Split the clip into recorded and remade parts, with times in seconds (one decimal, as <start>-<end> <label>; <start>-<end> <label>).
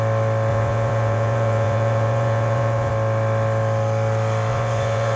0.0-0.5 recorded; 0.5-2.9 remade; 2.9-4.5 recorded; 4.5-5.2 remade